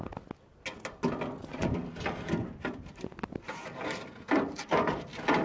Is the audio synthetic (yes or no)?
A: no